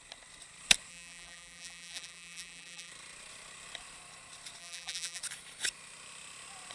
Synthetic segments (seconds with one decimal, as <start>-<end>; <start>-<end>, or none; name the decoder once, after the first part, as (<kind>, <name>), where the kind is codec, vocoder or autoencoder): 0.9-2.9 (vocoder, BigVGAN v2); 4.6-5.2